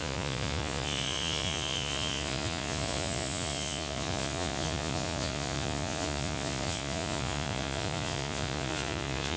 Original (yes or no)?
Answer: no